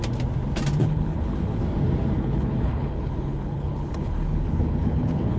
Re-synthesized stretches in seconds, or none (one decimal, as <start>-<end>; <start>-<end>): 0.8-1.6; 2.1-5.4